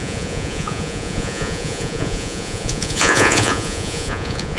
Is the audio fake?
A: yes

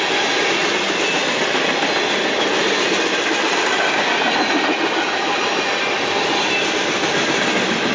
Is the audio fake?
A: no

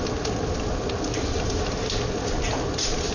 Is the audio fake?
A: no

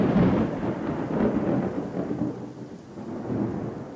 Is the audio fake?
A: no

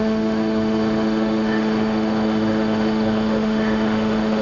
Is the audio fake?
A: yes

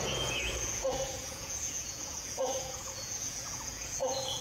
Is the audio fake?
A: yes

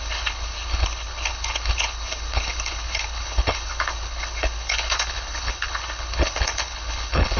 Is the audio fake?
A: yes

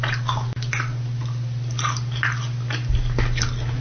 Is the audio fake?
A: no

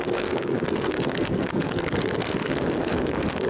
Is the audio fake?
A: yes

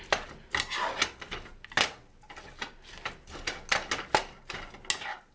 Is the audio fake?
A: no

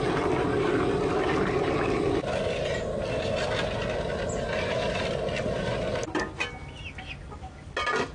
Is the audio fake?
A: no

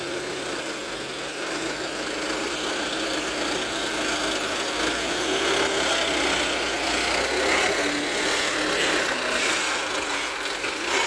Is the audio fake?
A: no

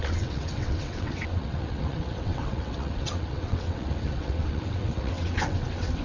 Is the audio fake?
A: yes